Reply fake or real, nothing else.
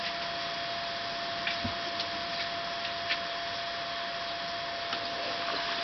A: fake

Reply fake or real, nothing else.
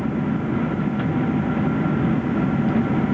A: real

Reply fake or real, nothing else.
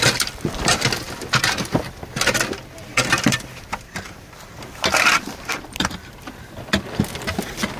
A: fake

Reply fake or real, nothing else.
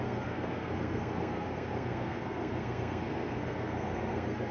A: fake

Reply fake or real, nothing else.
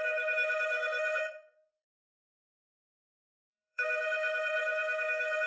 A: fake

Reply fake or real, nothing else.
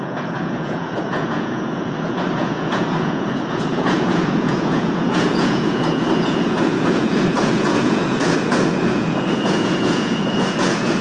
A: fake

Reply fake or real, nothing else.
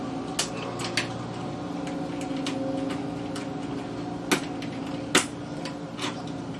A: real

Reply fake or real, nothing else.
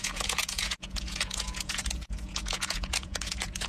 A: fake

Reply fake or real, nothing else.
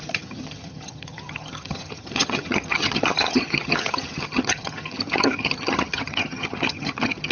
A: fake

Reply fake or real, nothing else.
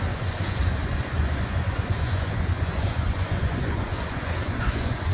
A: fake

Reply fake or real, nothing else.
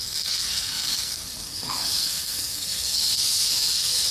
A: fake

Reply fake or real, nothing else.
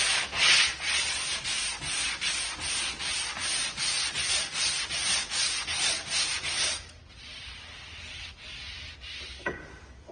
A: real